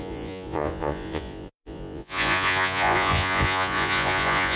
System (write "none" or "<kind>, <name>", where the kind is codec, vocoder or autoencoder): vocoder, Vocos